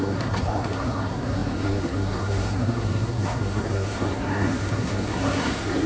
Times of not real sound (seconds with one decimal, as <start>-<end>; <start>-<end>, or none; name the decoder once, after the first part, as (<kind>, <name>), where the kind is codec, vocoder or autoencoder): 0.0-5.9 (codec, SNAC)